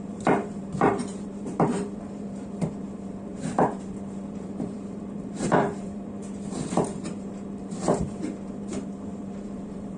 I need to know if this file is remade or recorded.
remade